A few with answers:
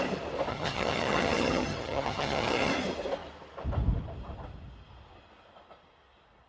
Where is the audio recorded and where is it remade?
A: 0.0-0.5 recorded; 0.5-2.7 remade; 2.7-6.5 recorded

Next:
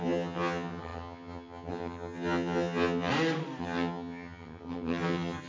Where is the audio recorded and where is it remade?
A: 0.0-3.1 remade; 3.1-3.6 recorded; 3.6-5.5 remade

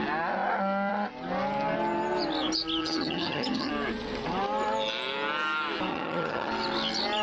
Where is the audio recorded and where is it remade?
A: 0.0-2.8 recorded; 2.8-3.7 remade; 3.7-5.9 recorded; 5.9-6.5 remade; 6.5-7.2 recorded

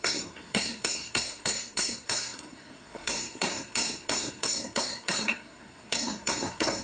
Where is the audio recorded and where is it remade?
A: 0.0-6.8 remade

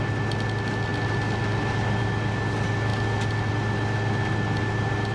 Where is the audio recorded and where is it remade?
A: 0.0-5.1 recorded

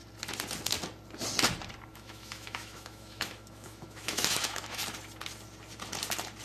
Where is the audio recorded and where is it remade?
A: 0.0-1.9 recorded; 1.9-4.8 remade; 4.8-6.4 recorded

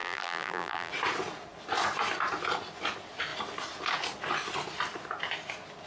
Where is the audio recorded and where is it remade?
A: 0.0-0.9 remade; 0.9-5.9 recorded